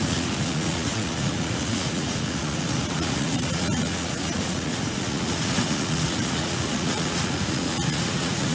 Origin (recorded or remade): remade